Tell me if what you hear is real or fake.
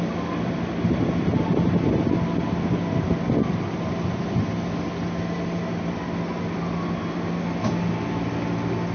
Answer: real